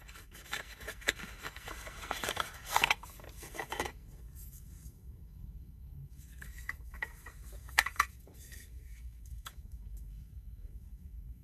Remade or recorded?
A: remade